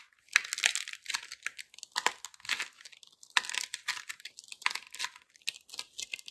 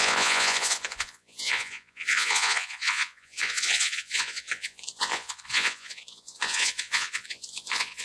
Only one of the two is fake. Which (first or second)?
second